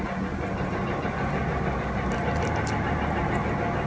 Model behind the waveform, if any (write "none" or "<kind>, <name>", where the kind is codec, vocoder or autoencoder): none